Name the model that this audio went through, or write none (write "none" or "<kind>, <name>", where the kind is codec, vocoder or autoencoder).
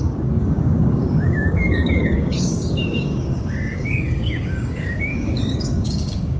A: codec, DAC